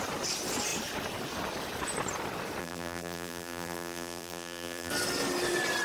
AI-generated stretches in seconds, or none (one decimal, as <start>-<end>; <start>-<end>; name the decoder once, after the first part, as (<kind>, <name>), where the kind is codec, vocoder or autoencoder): 2.6-4.9 (vocoder, BigVGAN v2)